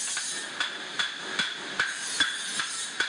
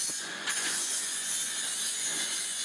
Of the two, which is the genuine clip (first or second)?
first